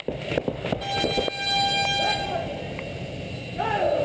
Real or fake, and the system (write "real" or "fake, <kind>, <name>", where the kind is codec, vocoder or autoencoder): real